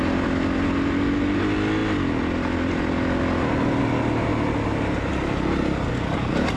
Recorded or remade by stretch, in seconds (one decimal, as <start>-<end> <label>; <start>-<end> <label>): 0.0-6.6 recorded

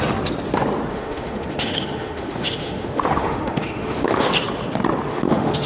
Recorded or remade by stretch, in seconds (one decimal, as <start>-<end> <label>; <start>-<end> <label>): 0.0-0.9 recorded; 0.9-4.3 remade; 4.3-5.1 recorded; 5.1-5.7 remade